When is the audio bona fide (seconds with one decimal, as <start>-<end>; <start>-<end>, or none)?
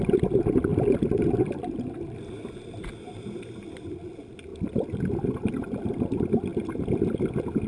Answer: 0.0-7.7